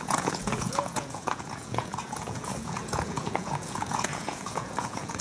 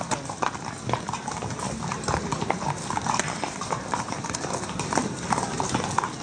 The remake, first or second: first